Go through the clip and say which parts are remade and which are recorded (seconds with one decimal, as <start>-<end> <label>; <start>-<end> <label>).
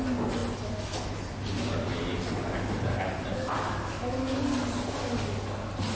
0.0-5.9 recorded